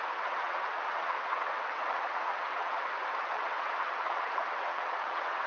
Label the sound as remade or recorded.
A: remade